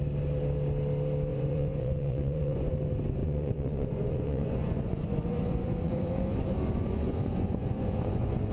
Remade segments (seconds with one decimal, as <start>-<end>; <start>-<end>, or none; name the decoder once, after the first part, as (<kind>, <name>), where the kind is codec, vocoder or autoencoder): 1.3-2.7 (vocoder, Vocos); 3.2-8.5